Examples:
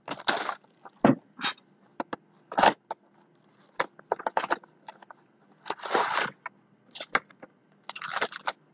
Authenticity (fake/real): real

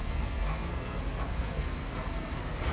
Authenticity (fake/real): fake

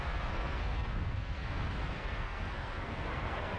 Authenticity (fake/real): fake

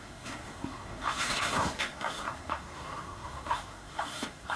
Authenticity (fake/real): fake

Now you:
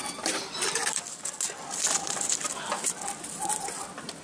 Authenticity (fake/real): real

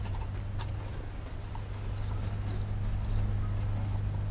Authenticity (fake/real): real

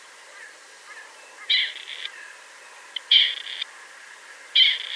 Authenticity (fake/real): real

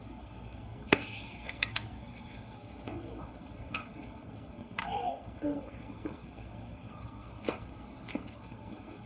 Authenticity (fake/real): fake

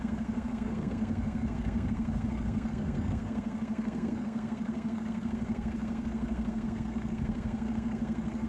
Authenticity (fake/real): fake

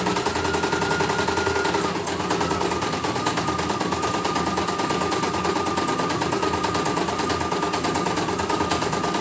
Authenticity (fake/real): real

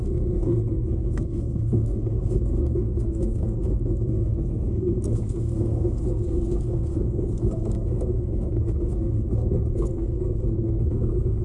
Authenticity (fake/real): fake